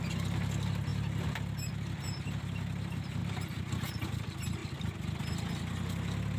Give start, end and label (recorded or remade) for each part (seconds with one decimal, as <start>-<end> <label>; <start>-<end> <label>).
0.0-0.9 recorded; 0.9-1.7 remade; 1.7-6.4 recorded